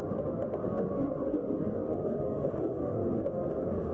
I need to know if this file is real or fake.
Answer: fake